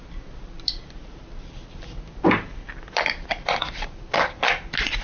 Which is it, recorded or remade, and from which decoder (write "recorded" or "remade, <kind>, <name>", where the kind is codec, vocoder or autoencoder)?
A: recorded